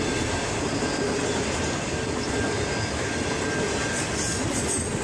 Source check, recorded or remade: recorded